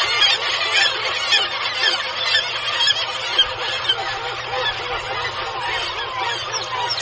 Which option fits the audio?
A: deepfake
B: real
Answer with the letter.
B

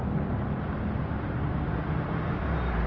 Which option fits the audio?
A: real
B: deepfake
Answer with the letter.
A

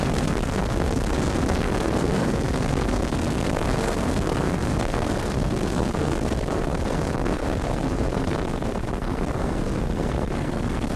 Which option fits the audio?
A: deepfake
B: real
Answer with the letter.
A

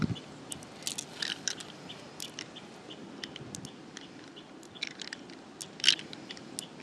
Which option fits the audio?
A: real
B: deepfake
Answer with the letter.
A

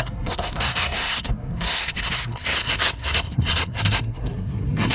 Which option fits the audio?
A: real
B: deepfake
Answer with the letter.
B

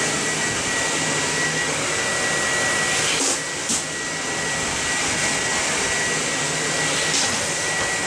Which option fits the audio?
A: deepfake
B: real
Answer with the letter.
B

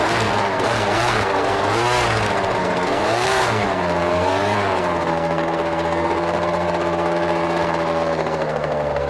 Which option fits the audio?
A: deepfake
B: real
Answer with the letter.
A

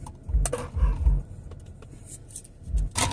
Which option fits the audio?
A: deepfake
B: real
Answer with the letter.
B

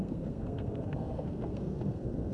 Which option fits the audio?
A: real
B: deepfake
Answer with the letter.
B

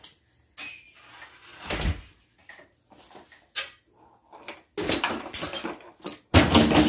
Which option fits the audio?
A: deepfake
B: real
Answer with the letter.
B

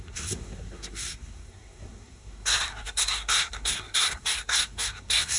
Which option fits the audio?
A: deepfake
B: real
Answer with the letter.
A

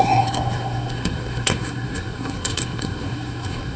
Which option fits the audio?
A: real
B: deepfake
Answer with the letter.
B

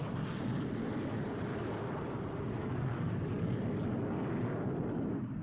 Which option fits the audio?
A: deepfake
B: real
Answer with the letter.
B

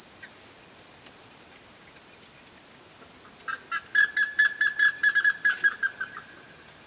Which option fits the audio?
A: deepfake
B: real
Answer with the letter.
B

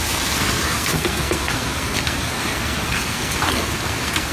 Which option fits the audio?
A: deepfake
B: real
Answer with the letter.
A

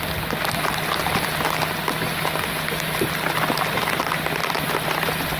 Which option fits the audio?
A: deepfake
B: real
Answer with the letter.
B